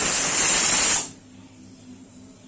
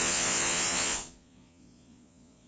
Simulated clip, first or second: second